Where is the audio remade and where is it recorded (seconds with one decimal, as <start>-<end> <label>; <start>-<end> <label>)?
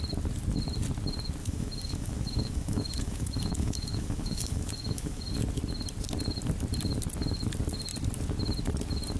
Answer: 0.0-1.4 recorded; 1.4-5.3 remade; 5.3-9.2 recorded